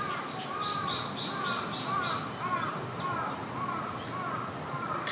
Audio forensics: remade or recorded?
recorded